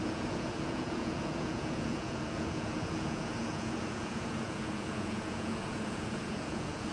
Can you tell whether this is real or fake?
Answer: fake